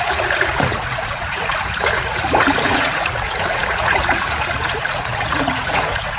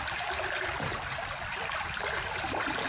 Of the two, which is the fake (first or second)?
first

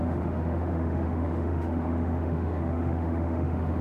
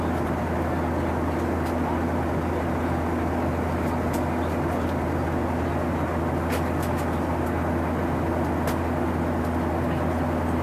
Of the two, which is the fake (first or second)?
first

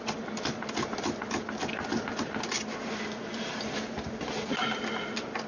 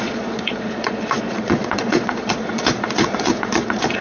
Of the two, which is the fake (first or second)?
second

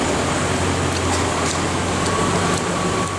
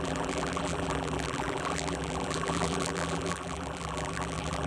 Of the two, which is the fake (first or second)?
second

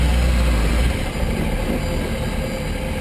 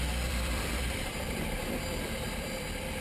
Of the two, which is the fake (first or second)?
second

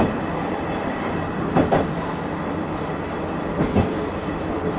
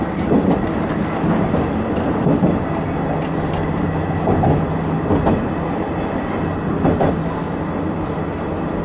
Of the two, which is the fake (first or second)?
first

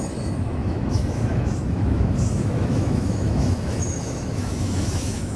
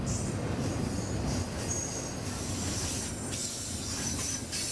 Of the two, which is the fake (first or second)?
first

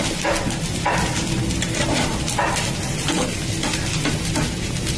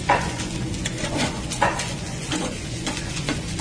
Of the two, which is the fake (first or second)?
second